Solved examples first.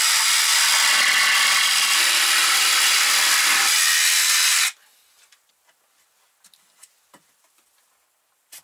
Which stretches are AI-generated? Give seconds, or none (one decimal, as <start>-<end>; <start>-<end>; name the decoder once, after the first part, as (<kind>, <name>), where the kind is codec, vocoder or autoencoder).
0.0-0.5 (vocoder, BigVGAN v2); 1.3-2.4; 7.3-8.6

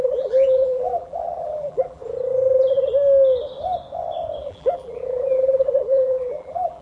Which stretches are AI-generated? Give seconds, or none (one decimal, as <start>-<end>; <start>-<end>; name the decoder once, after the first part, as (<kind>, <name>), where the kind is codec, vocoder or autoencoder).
0.0-2.0 (vocoder, BigVGAN v2); 4.4-6.8

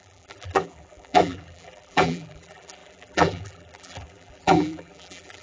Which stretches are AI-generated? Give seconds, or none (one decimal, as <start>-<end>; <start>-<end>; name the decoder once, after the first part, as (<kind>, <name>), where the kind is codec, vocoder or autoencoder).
0.0-5.4 (vocoder, BigVGAN v2)

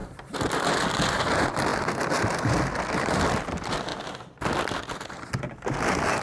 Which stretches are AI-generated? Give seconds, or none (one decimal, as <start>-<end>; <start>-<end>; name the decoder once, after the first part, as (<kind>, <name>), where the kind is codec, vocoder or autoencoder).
0.0-0.6 (vocoder, BigVGAN v2)

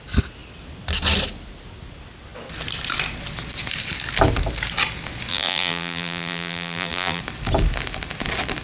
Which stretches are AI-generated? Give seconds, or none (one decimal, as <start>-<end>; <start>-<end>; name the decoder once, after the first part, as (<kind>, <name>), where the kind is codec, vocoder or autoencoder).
5.3-7.2 (vocoder, BigVGAN v2)

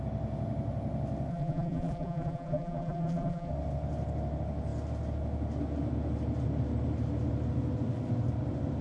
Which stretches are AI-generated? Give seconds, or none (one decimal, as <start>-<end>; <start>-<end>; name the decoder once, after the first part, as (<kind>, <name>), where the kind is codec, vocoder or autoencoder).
1.3-3.5 (vocoder, BigVGAN v2)